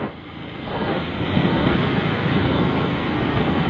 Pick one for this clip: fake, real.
fake